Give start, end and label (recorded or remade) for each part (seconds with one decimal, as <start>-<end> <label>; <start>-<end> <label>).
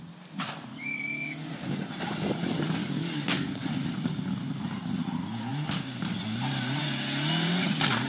0.0-0.7 recorded; 0.7-1.5 remade; 1.5-2.8 recorded; 2.8-3.7 remade; 3.7-8.1 recorded